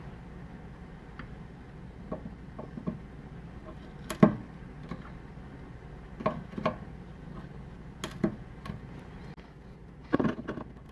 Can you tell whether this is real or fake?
real